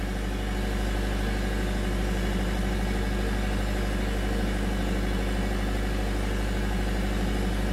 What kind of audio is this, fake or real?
real